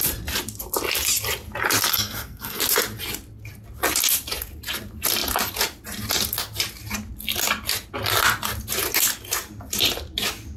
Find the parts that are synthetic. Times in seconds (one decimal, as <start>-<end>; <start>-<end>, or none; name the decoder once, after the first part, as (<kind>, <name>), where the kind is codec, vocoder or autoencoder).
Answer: 1.9-2.6 (codec, SNAC)